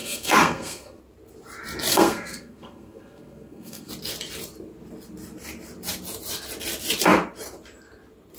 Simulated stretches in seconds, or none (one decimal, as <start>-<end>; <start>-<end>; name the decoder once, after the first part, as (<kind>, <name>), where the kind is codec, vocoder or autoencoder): 0.0-1.0 (codec, SNAC); 1.9-3.9

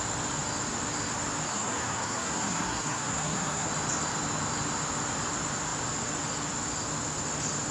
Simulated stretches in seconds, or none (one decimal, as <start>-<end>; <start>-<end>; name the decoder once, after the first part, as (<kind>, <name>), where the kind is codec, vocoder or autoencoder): 1.5-3.7 (codec, SNAC)

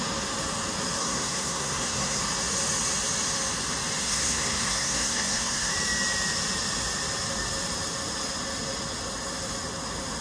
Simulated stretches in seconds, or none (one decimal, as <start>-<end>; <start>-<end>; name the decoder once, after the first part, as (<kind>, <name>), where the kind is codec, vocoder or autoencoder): 1.0-2.2 (codec, SNAC); 4.0-5.7

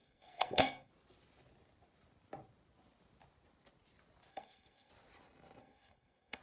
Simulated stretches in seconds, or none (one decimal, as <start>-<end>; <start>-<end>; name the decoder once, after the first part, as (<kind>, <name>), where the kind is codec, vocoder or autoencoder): 0.0-0.9 (codec, SNAC); 4.3-4.9; 5.6-6.4

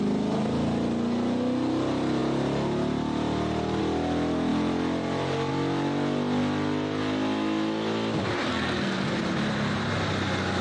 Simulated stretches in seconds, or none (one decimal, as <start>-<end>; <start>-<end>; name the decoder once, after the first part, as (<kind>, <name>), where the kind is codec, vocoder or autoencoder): 8.5-9.1 (codec, SNAC)